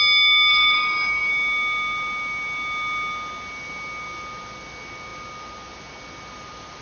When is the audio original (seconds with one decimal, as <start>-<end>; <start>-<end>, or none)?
0.0-0.5; 1.3-6.8